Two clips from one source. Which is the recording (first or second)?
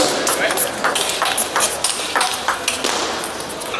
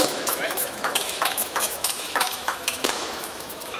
first